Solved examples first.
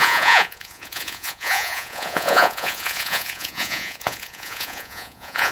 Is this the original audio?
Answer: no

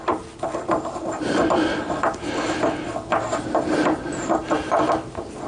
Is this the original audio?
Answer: yes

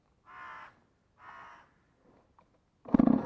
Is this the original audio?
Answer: yes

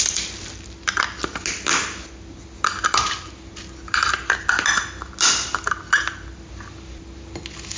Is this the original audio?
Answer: yes